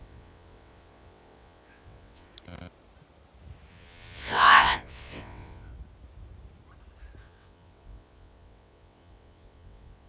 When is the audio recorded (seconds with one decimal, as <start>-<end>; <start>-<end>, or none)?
2.3-3.7; 5.7-7.2